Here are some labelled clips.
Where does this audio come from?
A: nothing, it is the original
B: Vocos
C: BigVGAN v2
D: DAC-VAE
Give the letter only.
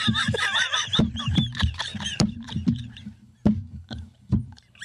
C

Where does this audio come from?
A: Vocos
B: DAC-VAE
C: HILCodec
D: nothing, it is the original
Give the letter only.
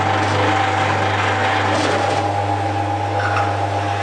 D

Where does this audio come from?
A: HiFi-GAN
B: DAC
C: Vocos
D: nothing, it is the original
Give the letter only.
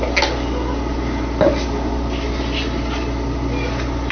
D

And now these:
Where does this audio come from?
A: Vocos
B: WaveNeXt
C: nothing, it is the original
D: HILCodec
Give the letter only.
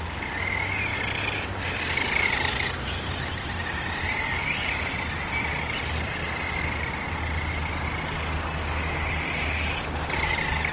C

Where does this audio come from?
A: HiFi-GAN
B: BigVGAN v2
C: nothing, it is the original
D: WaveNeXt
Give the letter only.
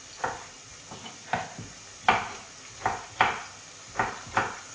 C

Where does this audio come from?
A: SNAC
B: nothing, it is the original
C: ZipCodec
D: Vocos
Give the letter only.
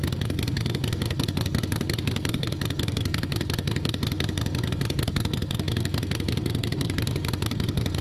A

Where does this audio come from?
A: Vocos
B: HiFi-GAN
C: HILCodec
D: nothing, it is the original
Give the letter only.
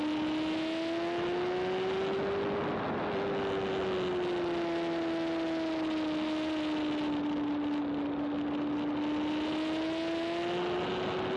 D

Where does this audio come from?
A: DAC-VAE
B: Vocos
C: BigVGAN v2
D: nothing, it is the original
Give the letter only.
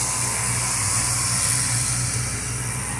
D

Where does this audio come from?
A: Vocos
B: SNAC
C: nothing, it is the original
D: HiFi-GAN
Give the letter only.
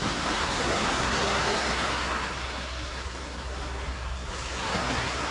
B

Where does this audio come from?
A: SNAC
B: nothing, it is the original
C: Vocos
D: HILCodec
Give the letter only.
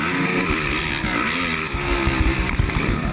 B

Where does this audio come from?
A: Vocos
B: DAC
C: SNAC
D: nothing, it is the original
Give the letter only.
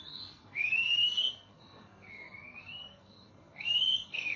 C